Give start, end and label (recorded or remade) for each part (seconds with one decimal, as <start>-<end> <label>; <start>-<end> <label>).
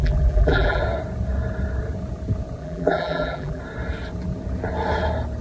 0.0-0.8 remade; 0.8-2.6 recorded; 2.6-3.6 remade; 3.6-5.4 recorded